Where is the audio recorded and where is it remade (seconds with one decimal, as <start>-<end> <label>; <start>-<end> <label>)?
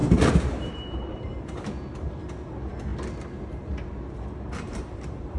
0.0-1.6 remade; 1.6-4.7 recorded; 4.7-5.4 remade